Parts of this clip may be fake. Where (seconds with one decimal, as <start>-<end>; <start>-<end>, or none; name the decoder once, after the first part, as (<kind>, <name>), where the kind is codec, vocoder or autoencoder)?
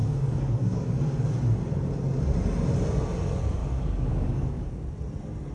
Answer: 0.0-1.0 (codec, DAC); 3.6-4.7